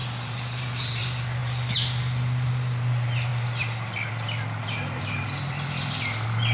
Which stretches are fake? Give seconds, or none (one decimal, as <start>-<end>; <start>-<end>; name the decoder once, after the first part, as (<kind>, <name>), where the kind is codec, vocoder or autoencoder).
0.0-1.0 (vocoder, BigVGAN v2)